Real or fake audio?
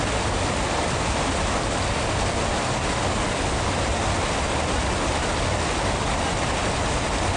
real